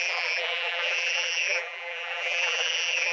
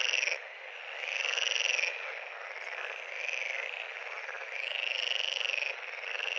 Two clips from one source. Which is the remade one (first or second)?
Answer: first